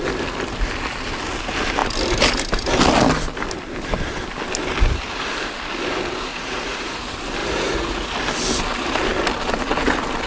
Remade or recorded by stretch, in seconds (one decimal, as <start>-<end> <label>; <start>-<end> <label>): 0.0-6.3 recorded; 6.3-7.0 remade; 7.0-7.4 recorded; 7.4-8.1 remade; 8.1-10.3 recorded